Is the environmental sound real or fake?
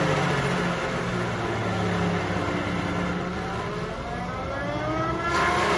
real